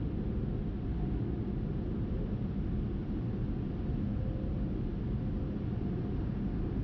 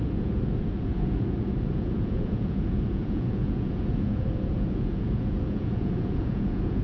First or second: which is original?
first